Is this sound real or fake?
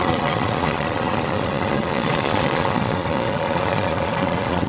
fake